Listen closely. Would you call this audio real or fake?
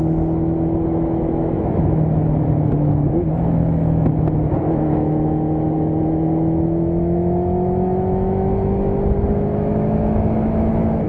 fake